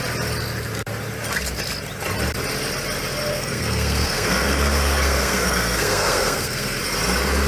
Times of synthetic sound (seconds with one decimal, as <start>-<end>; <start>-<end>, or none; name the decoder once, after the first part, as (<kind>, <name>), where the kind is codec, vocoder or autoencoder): 3.3-6.8 (codec, SNAC)